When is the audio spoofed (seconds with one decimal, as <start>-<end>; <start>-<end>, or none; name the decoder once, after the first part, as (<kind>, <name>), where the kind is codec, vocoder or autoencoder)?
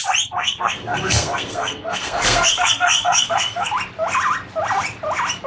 0.4-3.7 (codec, SNAC)